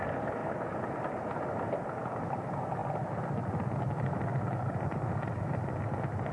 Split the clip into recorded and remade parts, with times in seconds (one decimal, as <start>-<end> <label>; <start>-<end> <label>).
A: 0.0-6.3 recorded